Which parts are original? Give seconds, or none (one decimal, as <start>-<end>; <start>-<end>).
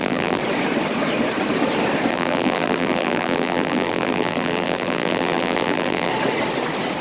0.4-2.1; 6.1-7.0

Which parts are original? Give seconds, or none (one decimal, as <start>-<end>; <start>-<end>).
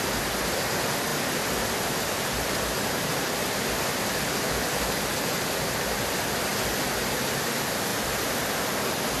0.0-1.1; 6.1-7.9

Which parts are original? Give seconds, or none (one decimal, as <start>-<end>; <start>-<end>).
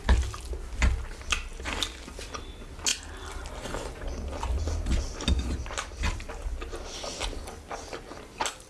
0.0-8.7